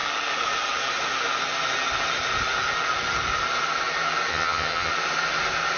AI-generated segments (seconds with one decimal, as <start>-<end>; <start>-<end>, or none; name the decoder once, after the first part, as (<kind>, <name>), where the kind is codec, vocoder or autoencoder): 4.3-4.9 (vocoder, HiFi-GAN)